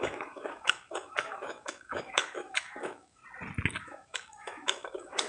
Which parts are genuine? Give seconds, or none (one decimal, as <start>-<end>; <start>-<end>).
3.2-3.8